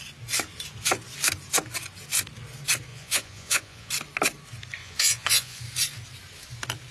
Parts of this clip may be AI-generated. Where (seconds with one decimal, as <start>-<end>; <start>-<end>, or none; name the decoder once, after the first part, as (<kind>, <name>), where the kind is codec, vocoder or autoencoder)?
2.9-3.9 (vocoder, Vocos); 4.8-5.6